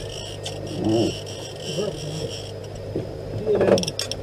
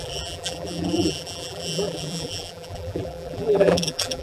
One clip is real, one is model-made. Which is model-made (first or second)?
second